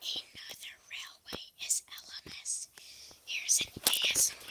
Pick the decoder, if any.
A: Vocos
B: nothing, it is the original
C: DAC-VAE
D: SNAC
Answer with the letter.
B